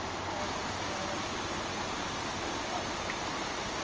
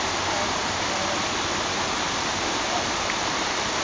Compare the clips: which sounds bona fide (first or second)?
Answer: first